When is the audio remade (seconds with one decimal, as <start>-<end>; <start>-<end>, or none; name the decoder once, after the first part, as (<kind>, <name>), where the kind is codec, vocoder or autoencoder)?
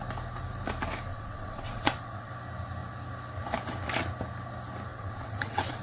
1.1-2.3 (vocoder, WaveNeXt); 4.9-5.8